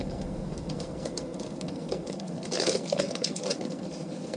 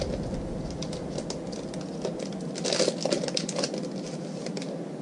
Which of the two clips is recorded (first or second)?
second